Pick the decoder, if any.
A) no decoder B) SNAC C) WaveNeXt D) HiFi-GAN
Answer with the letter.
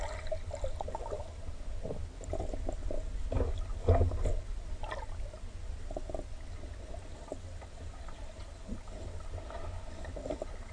A